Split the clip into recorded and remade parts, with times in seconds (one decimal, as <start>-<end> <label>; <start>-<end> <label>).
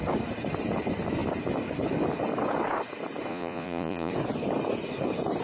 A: 0.0-3.3 recorded; 3.3-4.1 remade; 4.1-5.4 recorded